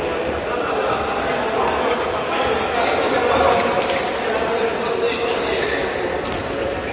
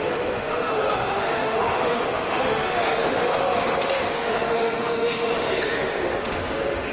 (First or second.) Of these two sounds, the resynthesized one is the second